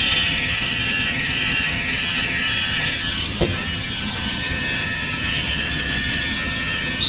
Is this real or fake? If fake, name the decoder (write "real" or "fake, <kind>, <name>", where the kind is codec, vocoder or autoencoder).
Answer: fake, vocoder, HiFi-GAN